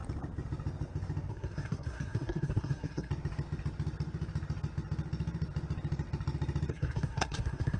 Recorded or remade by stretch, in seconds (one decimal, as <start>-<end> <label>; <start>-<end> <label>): 0.0-1.3 recorded; 1.3-3.1 remade; 3.1-6.7 recorded; 6.7-7.8 remade